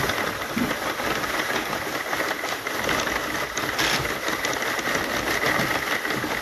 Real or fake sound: real